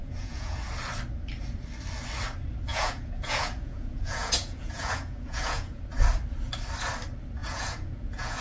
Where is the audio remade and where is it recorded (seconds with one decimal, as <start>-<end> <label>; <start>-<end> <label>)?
0.0-0.7 remade; 0.7-2.7 recorded; 2.7-5.8 remade; 5.8-7.4 recorded; 7.4-8.4 remade